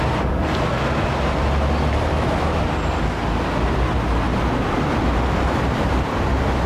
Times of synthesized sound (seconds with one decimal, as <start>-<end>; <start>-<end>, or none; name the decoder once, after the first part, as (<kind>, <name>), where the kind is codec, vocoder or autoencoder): 2.1-2.6 (autoencoder, DAC-VAE)